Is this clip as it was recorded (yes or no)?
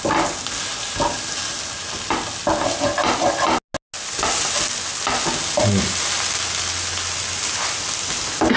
yes